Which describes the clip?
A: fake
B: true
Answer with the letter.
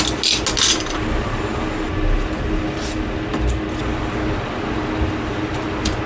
B